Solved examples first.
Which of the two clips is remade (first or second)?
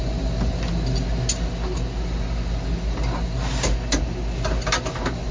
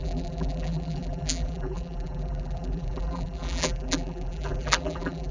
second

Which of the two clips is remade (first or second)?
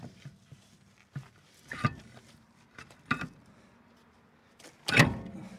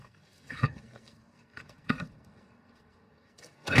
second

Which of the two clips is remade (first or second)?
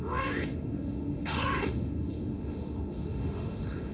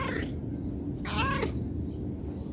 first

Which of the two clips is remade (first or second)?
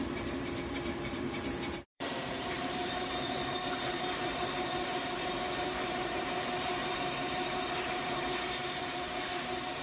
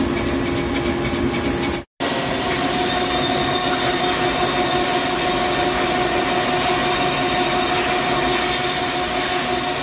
first